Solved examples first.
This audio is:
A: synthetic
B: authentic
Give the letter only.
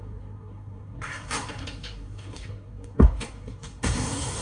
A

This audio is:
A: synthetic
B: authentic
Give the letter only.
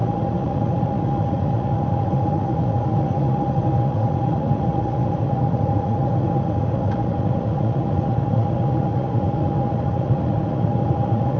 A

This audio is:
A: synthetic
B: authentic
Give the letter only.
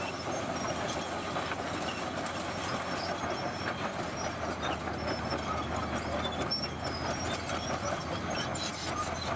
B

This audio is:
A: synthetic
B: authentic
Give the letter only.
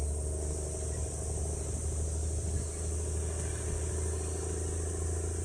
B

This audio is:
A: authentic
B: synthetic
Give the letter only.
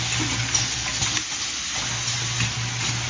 A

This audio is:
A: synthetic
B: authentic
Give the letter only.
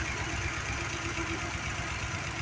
B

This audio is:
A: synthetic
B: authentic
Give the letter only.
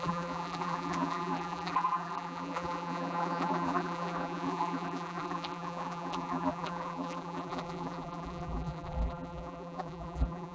A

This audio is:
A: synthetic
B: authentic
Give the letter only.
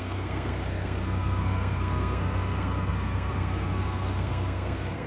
A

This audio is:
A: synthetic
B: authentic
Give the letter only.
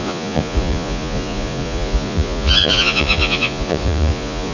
A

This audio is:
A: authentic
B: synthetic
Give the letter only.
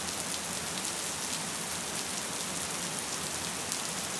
A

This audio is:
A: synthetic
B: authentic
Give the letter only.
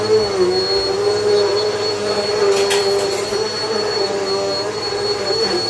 B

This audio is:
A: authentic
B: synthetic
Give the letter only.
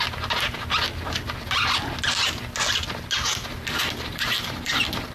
A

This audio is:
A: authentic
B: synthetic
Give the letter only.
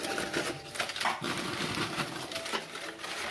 A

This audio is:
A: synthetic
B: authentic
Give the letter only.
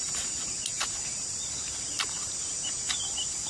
B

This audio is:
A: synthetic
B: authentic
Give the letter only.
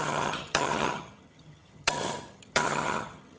A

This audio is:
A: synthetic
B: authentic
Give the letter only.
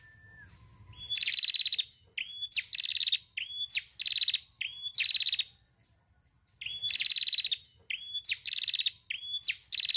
B